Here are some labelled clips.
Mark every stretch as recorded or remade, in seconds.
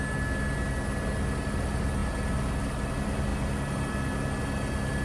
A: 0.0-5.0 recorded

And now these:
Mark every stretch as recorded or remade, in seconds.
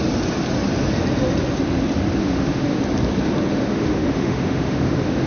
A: 0.0-2.2 recorded; 2.2-2.8 remade; 2.8-3.5 recorded; 3.5-5.3 remade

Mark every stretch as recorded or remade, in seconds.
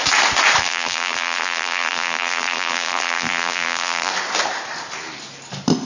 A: 0.0-0.6 recorded; 0.6-4.1 remade; 4.1-5.8 recorded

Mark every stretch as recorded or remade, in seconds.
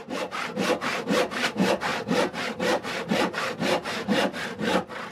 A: 0.0-5.1 recorded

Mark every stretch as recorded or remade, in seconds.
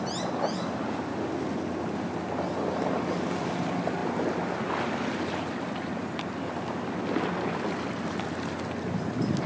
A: 0.0-9.5 recorded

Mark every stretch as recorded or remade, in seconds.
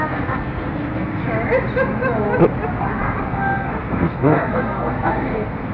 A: 0.0-1.2 remade; 1.2-3.3 recorded; 3.3-5.7 remade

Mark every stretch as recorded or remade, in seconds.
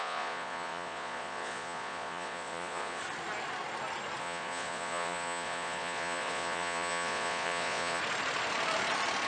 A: 0.0-3.0 remade; 3.0-4.2 recorded; 4.2-8.0 remade; 8.0-9.3 recorded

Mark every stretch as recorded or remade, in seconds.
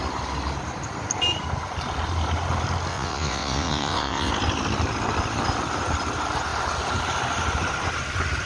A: 0.0-2.9 recorded; 2.9-4.3 remade; 4.3-8.5 recorded